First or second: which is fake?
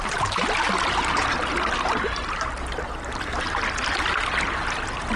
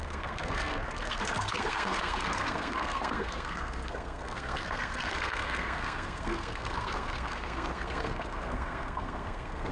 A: second